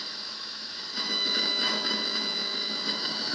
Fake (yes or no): yes